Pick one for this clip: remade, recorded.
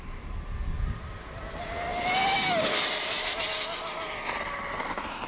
recorded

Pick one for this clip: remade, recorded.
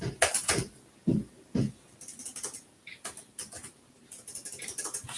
recorded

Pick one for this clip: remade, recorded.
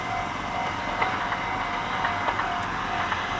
recorded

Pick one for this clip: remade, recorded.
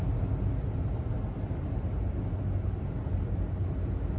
recorded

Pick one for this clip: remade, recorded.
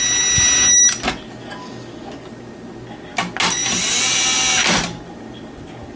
recorded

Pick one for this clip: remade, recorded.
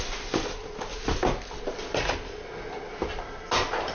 recorded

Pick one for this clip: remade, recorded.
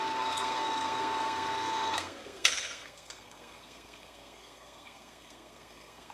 remade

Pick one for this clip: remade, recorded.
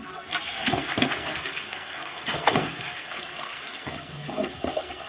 remade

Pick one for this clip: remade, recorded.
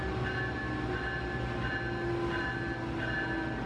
recorded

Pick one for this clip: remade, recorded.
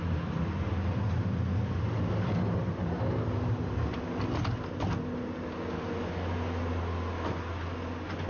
recorded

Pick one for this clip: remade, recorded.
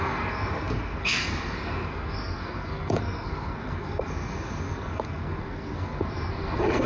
remade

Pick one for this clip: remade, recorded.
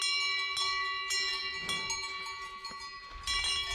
recorded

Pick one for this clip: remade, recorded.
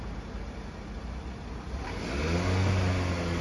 recorded